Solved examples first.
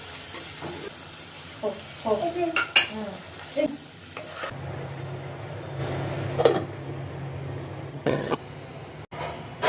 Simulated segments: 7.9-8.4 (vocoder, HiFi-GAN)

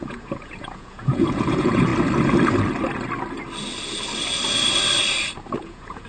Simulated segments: 0.0-1.9 (vocoder, Vocos); 5.6-6.1

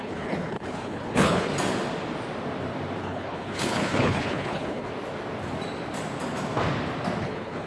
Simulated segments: 0.0-1.5 (codec, HILCodec); 3.0-4.9; 7.2-7.7

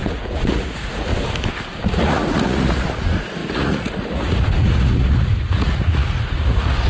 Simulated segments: 0.0-1.1 (vocoder, Vocos); 1.8-6.9